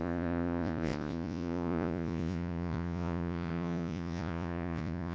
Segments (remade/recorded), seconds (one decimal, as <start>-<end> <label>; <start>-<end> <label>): 0.0-5.1 remade